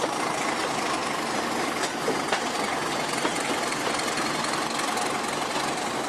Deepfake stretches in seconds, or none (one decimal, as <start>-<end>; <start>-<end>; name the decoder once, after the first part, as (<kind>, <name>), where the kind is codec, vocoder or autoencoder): none